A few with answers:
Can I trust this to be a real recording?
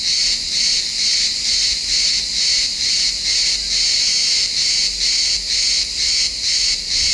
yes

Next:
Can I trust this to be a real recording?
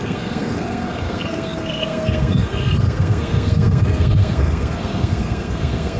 no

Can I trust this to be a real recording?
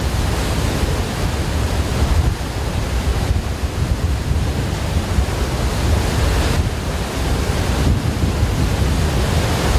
yes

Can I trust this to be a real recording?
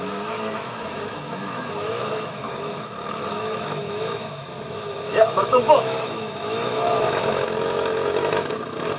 no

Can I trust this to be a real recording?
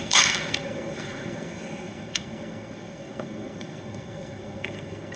no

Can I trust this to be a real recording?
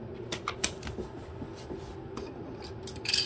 yes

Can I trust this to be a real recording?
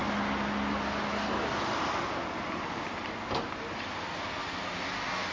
yes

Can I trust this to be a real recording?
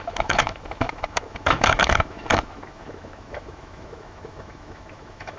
no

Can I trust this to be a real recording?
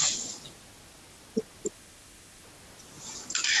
yes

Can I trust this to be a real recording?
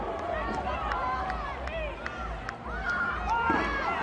yes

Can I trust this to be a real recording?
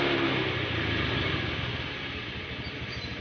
yes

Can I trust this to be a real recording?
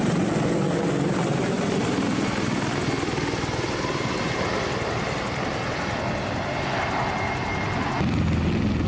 yes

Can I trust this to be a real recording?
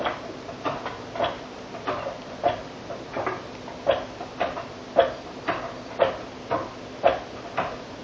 yes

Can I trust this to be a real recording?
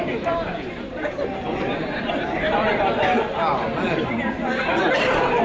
yes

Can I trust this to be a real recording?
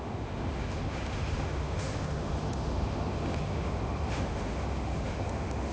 no